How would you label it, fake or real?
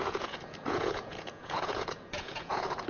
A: fake